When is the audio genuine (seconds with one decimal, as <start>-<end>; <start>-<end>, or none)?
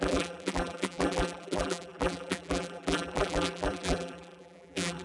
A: none